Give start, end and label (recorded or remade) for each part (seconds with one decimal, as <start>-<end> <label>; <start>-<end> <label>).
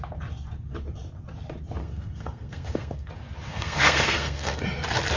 0.0-1.8 recorded; 1.8-3.1 remade; 3.1-3.5 recorded; 3.5-4.6 remade; 4.6-5.2 recorded